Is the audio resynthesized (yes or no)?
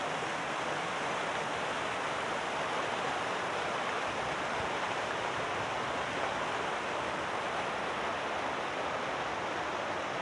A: no